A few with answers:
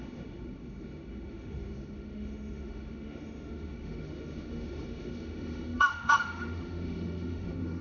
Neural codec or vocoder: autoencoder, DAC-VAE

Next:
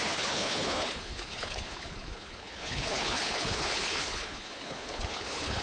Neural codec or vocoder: codec, HILCodec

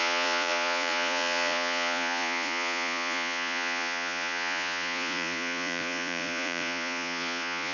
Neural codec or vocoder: vocoder, Vocos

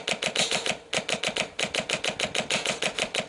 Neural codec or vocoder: none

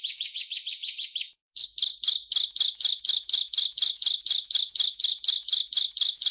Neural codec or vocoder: autoencoder, DAC-VAE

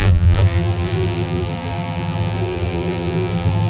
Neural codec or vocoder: vocoder, BigVGAN v2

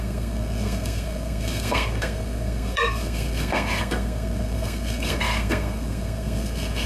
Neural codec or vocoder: codec, SNAC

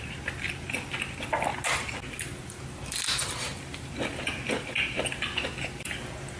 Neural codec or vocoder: none